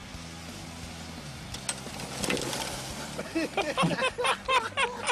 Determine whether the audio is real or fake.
real